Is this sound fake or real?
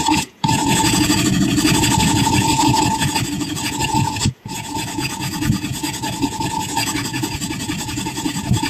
fake